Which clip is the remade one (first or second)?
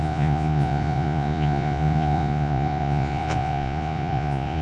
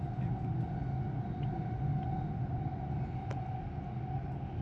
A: first